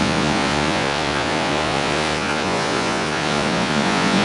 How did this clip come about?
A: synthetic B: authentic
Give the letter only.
A